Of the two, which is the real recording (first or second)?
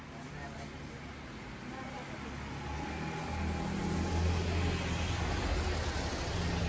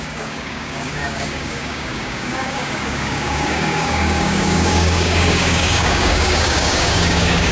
first